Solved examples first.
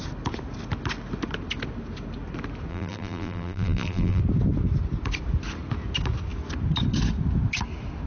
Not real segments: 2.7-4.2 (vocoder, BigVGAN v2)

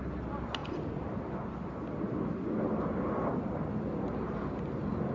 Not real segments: none

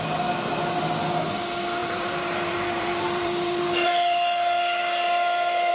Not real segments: 1.8-3.6 (vocoder, BigVGAN v2)

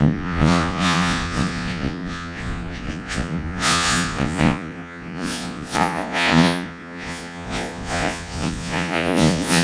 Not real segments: 0.0-9.6 (vocoder, Vocos)

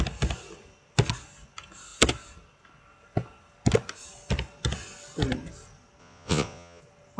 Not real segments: 6.0-6.8 (vocoder, Vocos)